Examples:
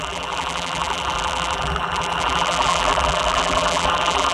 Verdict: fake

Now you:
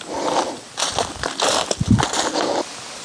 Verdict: real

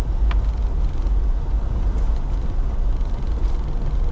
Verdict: real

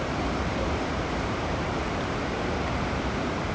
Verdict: fake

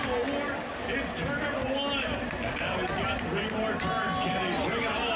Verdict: real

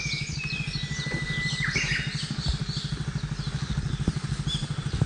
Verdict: real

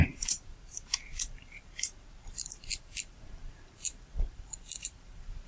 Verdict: fake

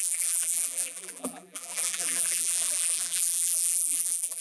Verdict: fake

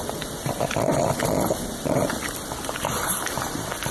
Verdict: fake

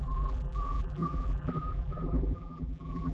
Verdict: fake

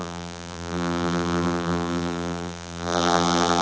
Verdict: fake